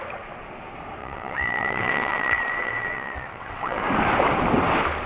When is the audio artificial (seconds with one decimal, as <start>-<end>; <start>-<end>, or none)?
1.0-3.8